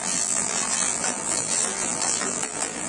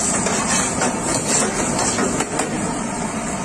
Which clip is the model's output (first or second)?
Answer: first